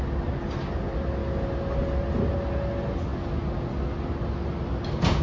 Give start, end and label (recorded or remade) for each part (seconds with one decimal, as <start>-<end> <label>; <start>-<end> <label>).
0.0-5.2 recorded